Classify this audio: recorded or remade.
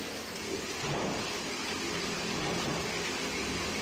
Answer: recorded